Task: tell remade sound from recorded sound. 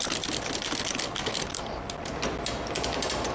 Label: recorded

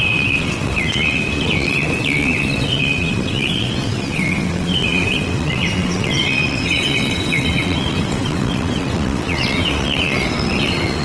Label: remade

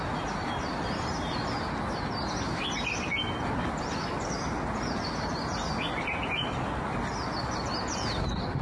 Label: recorded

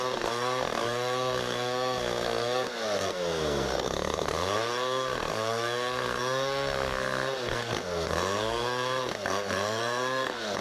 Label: remade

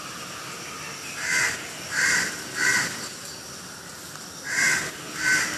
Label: recorded